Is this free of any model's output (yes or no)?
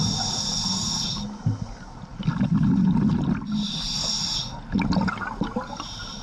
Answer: yes